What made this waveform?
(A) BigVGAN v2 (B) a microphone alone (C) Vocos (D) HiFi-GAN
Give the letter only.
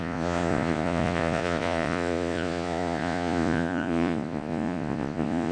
C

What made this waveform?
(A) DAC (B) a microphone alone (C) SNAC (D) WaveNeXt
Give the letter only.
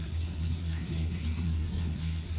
C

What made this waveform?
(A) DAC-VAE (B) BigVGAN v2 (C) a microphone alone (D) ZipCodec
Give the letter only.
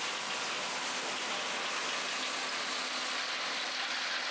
C